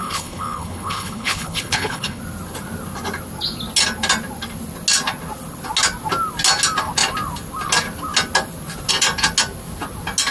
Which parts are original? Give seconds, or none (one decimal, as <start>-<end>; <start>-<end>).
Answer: 2.2-10.3